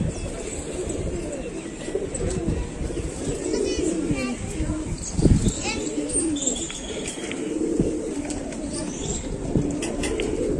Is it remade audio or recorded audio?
recorded